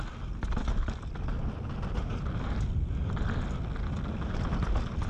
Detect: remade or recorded recorded